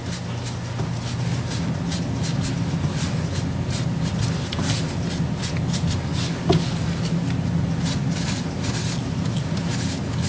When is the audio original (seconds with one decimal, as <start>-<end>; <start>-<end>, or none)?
0.0-10.3